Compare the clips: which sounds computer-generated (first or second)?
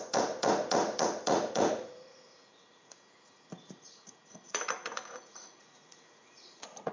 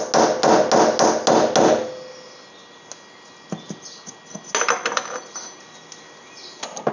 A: first